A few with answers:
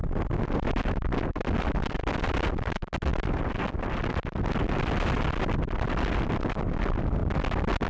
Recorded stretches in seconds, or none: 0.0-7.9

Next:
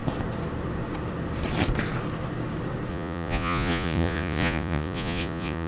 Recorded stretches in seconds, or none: 0.0-2.9

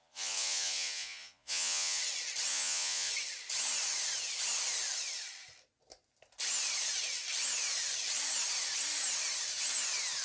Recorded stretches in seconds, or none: 2.0-2.5; 3.1-10.2

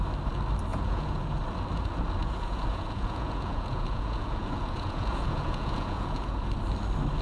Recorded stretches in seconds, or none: 0.0-0.7; 1.4-2.2; 6.5-7.2

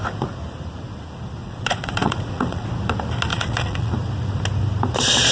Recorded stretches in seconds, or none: 0.0-1.4; 2.7-3.3; 3.9-5.3

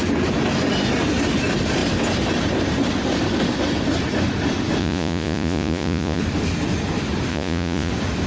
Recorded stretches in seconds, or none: 0.0-4.8; 6.2-7.3; 7.9-8.3